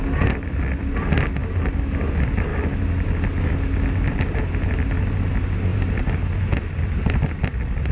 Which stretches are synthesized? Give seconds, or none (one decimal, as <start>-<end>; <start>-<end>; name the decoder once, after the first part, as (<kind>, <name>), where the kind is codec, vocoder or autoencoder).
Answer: none